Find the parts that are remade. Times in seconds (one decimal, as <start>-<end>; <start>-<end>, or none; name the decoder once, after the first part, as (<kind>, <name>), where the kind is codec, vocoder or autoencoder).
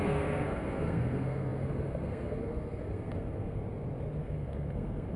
0.0-3.6 (codec, SNAC); 4.2-5.2